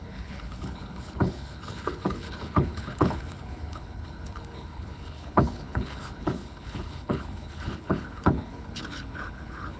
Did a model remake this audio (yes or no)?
yes